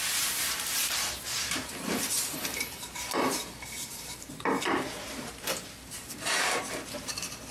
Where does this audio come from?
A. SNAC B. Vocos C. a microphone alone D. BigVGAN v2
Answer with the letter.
D